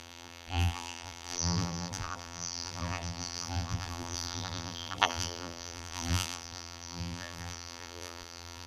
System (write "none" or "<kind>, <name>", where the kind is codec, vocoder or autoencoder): vocoder, BigVGAN v2